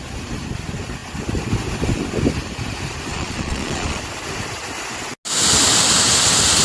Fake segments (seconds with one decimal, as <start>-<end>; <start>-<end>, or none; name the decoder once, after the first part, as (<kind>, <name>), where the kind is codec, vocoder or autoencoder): 3.1-4.0 (vocoder, Vocos)